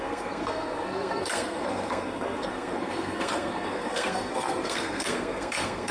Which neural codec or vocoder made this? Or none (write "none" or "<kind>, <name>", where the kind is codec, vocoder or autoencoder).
codec, SNAC